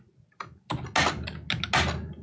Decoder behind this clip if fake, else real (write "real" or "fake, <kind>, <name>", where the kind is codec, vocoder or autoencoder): real